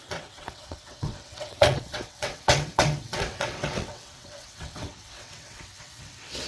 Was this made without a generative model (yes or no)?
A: no